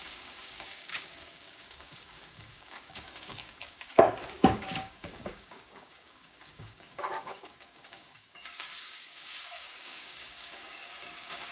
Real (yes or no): no